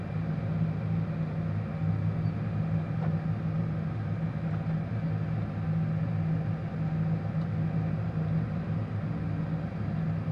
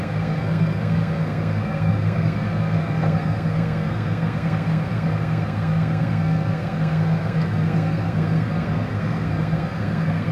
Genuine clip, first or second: first